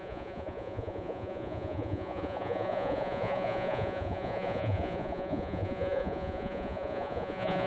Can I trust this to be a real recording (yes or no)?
no